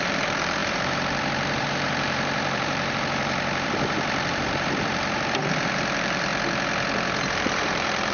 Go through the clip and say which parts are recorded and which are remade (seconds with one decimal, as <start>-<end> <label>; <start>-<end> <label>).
0.0-6.3 remade; 6.3-7.3 recorded; 7.3-8.1 remade